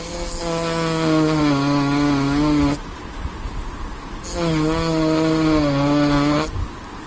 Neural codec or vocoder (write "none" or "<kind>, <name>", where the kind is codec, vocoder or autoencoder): none